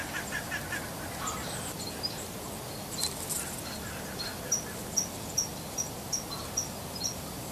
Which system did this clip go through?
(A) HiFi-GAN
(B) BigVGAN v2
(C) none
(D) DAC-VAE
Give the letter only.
C